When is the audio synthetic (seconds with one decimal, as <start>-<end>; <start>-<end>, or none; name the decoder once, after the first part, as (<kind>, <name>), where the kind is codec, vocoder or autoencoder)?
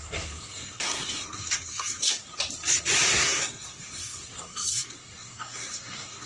0.0-2.3 (codec, SNAC); 3.1-6.3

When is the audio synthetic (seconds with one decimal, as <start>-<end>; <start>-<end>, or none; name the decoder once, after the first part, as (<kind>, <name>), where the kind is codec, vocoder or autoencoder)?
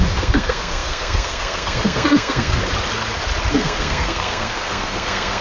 0.0-2.6 (codec, SNAC); 3.5-5.4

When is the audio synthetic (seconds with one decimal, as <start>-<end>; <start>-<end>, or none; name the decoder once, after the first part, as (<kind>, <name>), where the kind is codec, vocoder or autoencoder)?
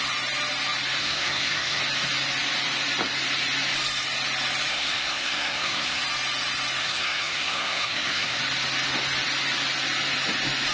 1.0-1.8 (codec, SNAC); 4.7-6.0; 6.8-8.4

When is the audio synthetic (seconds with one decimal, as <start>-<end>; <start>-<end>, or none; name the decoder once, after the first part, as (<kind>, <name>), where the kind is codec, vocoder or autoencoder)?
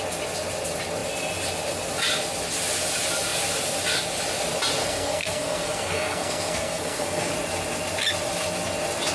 4.8-7.3 (codec, SNAC)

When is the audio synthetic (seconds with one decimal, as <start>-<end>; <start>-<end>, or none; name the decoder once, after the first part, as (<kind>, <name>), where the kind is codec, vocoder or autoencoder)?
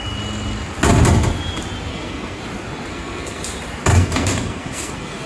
1.9-2.4 (codec, SNAC); 2.9-3.4; 3.9-5.3